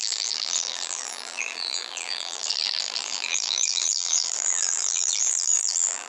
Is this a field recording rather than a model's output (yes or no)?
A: no